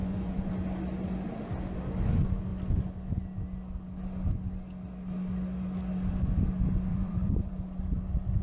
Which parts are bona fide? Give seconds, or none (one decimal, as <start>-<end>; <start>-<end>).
0.5-6.9; 7.5-8.4